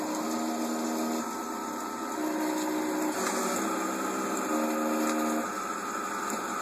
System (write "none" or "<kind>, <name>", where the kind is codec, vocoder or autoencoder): none